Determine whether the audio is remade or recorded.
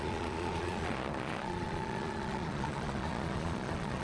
remade